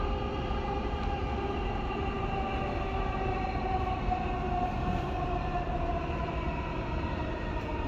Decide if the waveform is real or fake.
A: fake